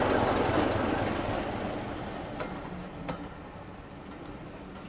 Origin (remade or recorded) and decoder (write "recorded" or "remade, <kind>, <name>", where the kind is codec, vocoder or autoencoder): recorded